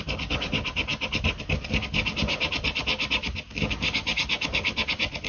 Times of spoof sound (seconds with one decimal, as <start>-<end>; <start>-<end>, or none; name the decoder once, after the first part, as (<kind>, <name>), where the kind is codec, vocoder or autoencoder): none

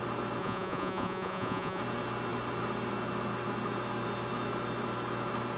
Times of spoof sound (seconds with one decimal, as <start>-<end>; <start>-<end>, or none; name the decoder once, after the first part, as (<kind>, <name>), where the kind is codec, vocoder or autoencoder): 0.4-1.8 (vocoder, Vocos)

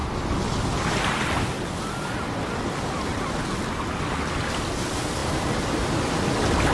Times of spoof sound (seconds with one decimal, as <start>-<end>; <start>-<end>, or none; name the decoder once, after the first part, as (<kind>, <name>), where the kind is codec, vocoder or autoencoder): none